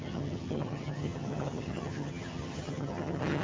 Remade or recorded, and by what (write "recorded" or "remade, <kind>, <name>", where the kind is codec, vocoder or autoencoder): remade, vocoder, HiFi-GAN